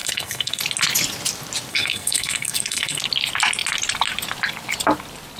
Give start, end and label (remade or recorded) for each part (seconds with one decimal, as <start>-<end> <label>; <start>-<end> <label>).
0.0-0.6 remade; 0.6-1.7 recorded; 1.7-3.0 remade; 3.0-5.4 recorded